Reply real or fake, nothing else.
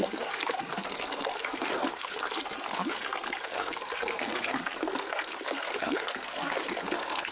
fake